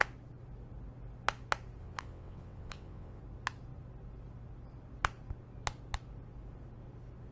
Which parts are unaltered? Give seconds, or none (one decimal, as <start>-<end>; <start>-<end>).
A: 0.0-1.8; 3.2-7.3